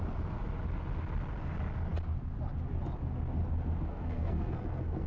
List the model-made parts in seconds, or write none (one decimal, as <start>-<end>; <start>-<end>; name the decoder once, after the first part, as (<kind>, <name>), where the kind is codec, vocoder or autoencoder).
3.9-5.1 (codec, SNAC)